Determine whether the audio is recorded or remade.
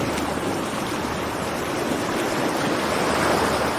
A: remade